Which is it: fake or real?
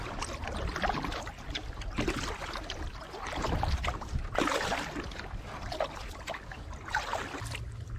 real